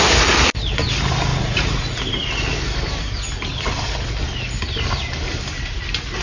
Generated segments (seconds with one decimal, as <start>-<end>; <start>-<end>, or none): 1.3-2.0